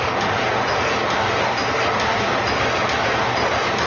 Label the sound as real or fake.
real